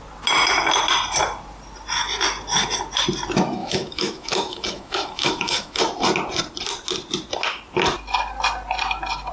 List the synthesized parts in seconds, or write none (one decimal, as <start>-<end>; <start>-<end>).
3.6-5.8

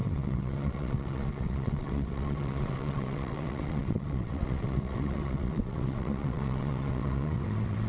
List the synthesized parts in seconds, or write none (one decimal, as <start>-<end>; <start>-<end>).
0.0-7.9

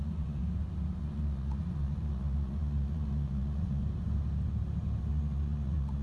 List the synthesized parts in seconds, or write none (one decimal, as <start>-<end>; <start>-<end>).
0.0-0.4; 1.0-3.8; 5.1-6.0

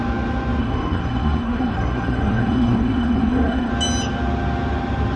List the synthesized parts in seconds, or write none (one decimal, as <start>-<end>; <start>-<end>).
0.6-3.7

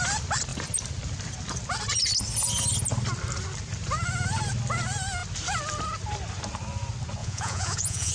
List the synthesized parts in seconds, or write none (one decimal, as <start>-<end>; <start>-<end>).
7.2-8.1

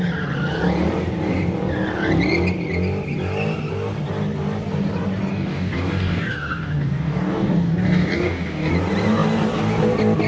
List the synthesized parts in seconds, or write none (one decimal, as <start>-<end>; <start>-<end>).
5.3-8.7